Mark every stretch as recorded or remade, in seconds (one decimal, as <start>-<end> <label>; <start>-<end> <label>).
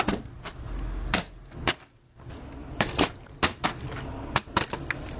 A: 0.0-2.6 recorded; 2.6-3.4 remade; 3.4-5.2 recorded